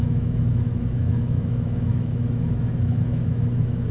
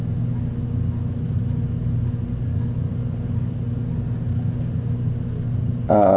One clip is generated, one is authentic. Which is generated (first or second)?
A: first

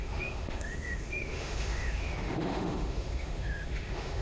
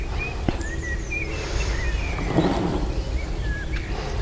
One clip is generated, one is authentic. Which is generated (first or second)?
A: first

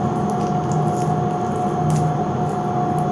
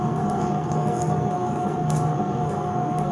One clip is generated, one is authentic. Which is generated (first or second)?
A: second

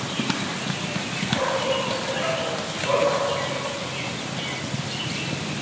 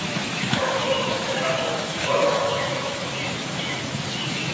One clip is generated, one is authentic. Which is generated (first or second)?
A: second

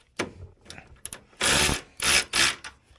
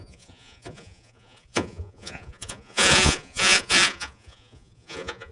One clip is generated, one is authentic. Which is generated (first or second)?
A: second